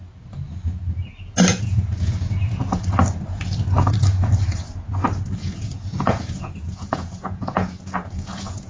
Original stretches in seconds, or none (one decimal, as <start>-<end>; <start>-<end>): 0.0-1.5; 2.2-5.4